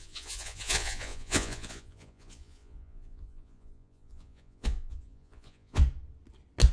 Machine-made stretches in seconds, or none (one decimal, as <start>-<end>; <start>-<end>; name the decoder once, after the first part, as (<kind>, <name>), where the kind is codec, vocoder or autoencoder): 0.0-5.8 (vocoder, Vocos)